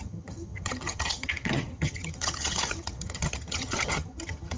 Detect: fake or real fake